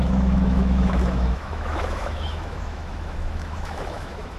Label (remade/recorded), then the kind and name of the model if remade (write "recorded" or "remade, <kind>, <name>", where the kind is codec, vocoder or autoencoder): remade, autoencoder, DAC-VAE